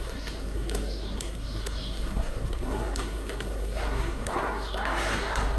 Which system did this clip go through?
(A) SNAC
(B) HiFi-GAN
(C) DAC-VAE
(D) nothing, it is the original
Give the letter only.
A